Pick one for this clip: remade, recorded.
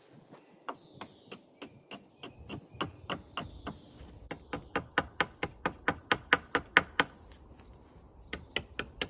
recorded